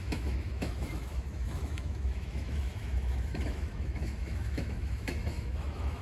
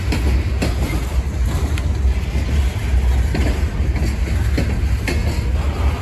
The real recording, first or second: second